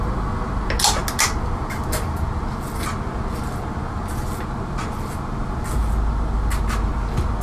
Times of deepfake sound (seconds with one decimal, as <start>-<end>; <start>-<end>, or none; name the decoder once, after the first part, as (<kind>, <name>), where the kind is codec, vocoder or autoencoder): none